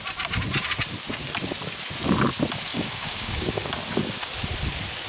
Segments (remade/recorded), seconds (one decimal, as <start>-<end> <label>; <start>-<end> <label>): 0.0-2.7 recorded; 2.7-3.7 remade; 3.7-5.1 recorded